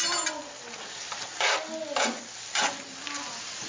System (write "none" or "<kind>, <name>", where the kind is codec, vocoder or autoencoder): none